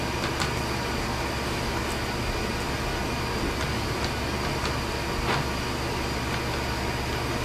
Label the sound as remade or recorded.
recorded